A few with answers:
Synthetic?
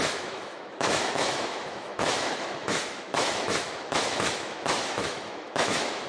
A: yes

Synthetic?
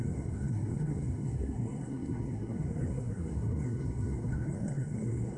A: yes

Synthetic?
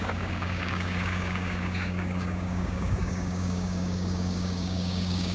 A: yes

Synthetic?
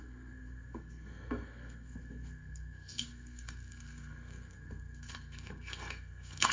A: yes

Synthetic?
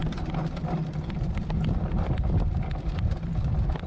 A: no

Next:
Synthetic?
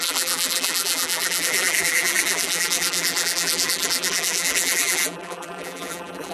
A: yes